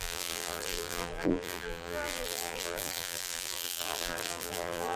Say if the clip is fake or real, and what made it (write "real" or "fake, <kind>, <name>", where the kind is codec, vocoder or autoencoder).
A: fake, vocoder, BigVGAN v2